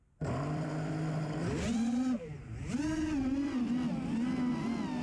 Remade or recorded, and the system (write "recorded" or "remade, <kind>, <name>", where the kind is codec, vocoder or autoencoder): recorded